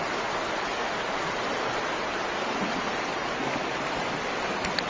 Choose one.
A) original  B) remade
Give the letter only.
A